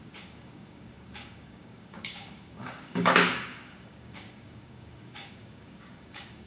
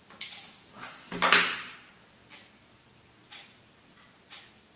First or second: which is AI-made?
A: first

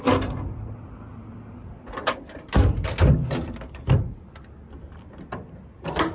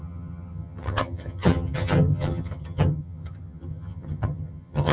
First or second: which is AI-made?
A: second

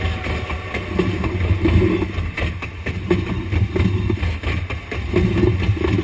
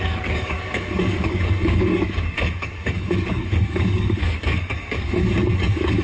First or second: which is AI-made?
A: second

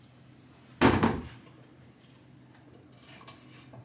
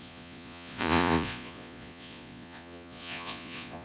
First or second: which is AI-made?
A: second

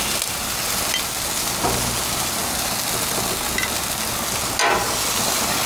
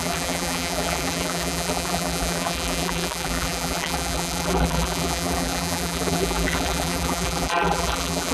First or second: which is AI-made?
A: second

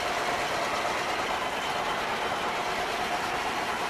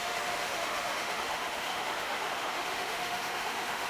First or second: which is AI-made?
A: second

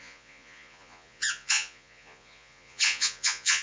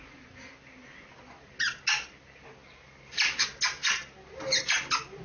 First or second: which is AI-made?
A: first